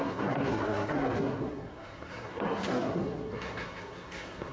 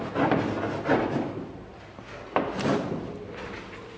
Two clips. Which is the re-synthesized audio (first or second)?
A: first